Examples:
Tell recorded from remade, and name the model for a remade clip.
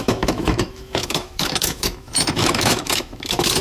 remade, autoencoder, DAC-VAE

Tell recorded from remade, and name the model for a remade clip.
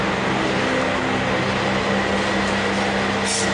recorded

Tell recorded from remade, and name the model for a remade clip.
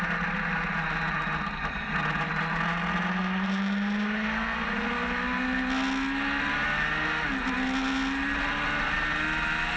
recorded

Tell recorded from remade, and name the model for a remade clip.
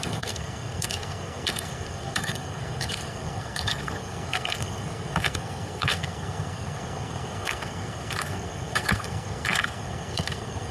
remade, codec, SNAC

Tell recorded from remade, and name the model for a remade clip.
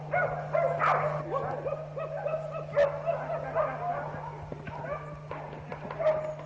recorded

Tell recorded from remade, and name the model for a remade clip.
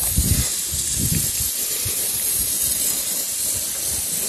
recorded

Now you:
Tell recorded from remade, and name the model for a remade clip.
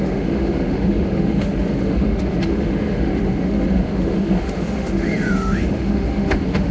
remade, autoencoder, DAC-VAE